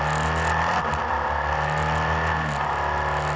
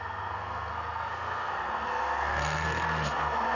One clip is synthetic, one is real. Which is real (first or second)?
first